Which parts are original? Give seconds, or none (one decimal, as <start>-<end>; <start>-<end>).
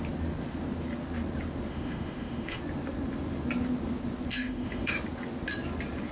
0.0-1.7; 2.6-4.3; 4.9-6.1